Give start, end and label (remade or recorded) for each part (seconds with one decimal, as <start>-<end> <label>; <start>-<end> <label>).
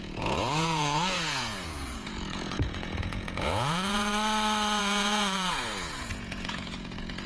0.0-4.1 remade; 4.1-4.8 recorded; 4.8-7.3 remade